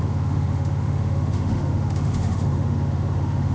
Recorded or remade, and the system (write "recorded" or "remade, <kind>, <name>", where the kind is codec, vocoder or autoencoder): remade, autoencoder, DAC-VAE